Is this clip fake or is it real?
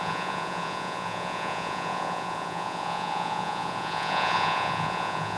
fake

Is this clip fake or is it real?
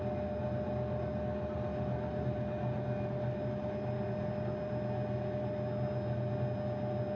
real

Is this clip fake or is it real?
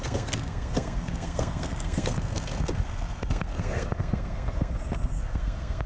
fake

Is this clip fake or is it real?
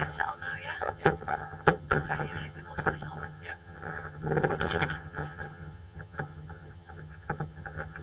fake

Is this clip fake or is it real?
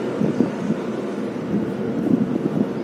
fake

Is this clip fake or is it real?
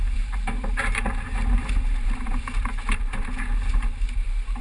fake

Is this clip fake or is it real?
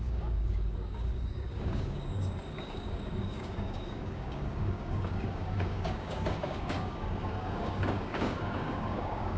fake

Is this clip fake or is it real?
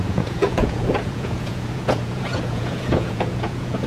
fake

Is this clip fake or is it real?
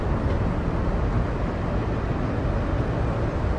real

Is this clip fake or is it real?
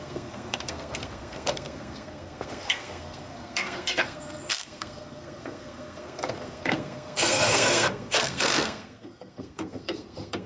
fake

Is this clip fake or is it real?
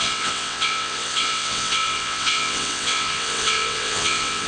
fake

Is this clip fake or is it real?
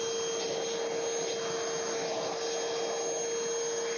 real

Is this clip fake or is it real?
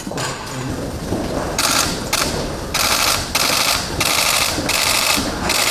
fake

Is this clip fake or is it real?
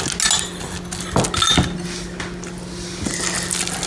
real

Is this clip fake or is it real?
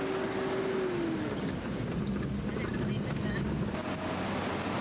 real